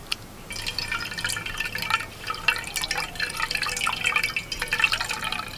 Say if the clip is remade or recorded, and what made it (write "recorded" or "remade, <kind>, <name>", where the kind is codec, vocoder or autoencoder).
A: recorded